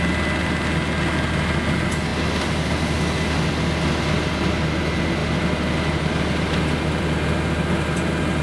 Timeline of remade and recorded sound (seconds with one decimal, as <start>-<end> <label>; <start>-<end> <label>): 0.0-8.4 recorded